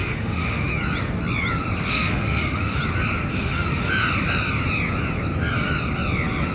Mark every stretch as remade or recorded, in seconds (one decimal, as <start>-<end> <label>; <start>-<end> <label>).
0.0-0.7 remade; 0.7-1.9 recorded; 1.9-2.8 remade; 2.8-3.3 recorded; 3.3-3.9 remade; 3.9-6.5 recorded